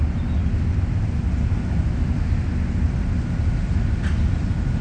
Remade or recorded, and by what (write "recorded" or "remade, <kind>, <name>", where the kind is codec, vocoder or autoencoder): recorded